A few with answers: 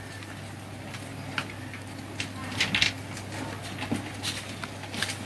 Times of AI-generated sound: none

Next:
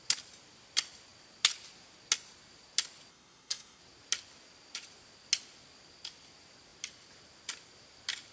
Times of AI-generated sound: 3.1-3.8 (codec, SNAC)

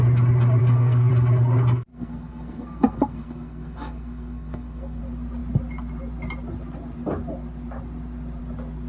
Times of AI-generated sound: 0.6-1.1 (codec, SNAC); 1.9-5.0

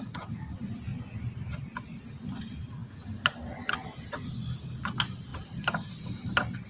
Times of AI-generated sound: none

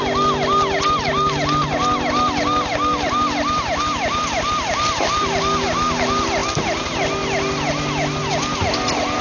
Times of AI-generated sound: none

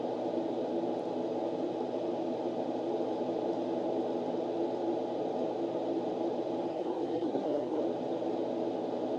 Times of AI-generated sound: 6.7-7.8 (codec, SNAC)

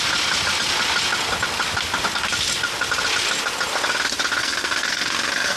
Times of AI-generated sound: 4.4-5.6 (codec, SNAC)

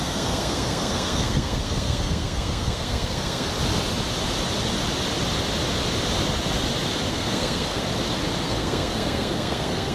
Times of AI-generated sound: 0.0-3.5 (codec, SNAC); 7.1-7.8; 8.4-9.9